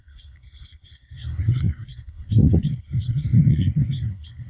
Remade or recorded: remade